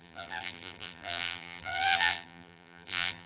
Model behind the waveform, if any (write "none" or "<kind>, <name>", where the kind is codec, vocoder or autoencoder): vocoder, BigVGAN v2